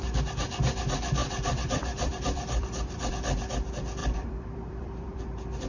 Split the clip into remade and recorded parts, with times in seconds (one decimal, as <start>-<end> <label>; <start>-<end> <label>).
0.0-1.2 recorded; 1.2-3.1 remade; 3.1-4.0 recorded; 4.0-5.2 remade; 5.2-5.7 recorded